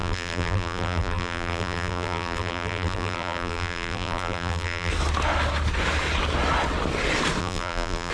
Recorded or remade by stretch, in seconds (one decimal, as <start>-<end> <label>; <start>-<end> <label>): 0.0-4.9 remade; 4.9-7.4 recorded; 7.4-8.1 remade